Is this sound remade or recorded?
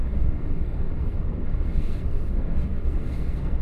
remade